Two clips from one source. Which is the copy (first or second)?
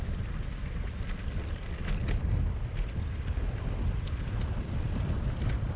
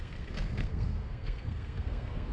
second